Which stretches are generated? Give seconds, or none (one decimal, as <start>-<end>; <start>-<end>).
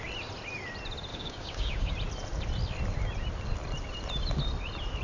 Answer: 1.1-1.9